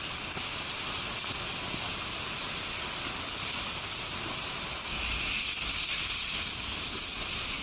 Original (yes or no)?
yes